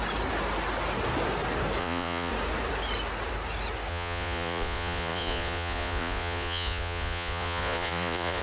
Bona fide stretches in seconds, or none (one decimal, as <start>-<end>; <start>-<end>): 0.0-1.8; 2.3-3.9